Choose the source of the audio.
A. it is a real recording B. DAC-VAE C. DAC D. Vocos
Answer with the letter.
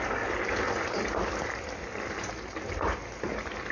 A